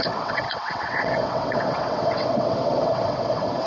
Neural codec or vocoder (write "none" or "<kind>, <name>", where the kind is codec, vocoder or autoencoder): vocoder, WaveNeXt